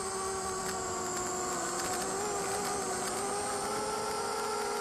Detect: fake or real real